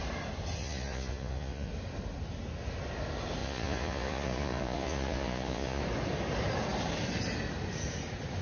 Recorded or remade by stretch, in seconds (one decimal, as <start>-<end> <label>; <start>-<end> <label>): 0.0-0.6 recorded; 0.6-1.7 remade; 1.7-3.4 recorded; 3.4-5.8 remade; 5.8-8.4 recorded